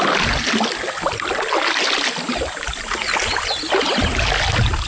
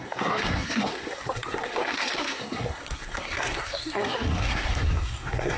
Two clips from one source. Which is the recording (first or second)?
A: first